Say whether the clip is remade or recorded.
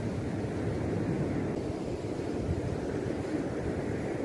recorded